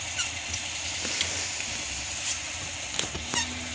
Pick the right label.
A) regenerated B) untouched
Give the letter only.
B